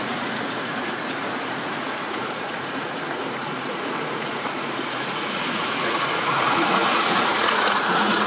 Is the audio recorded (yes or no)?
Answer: no